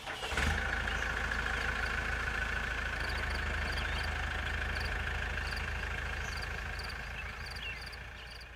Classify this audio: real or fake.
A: real